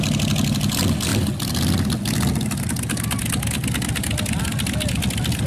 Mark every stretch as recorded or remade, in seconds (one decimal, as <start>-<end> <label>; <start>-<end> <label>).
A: 0.0-5.5 recorded